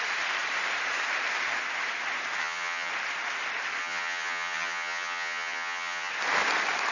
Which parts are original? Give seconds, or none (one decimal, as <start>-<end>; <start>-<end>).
0.0-2.4; 2.9-3.8; 6.1-6.9